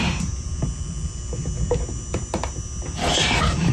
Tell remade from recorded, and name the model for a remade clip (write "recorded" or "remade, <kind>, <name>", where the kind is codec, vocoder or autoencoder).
recorded